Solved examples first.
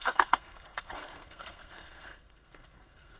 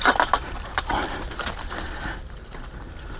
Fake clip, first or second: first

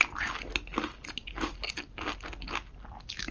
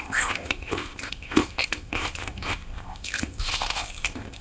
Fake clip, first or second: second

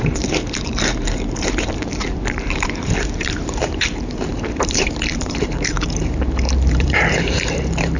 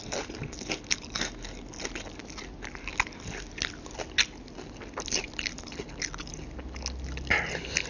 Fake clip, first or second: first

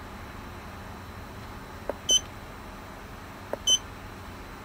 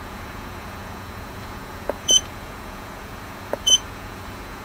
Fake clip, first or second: second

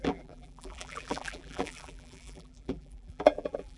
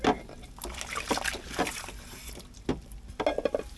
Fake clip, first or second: first